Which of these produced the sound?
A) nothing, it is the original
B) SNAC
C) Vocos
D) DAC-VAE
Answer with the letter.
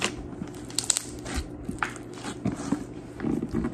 A